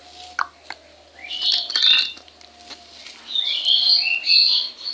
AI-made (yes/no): no